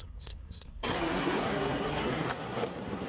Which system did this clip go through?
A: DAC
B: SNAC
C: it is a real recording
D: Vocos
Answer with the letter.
B